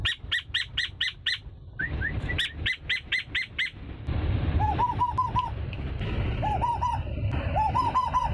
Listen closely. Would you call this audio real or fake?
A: real